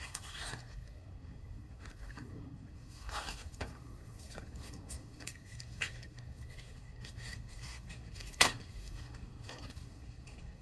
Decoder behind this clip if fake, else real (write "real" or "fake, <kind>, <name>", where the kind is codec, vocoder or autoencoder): fake, codec, SNAC